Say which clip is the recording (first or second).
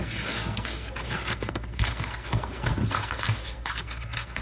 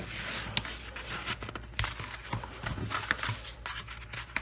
second